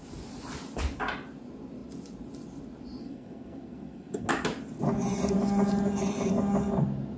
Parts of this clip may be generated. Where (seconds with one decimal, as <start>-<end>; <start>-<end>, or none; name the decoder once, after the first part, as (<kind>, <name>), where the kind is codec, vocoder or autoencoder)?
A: 3.0-4.3 (codec, SNAC)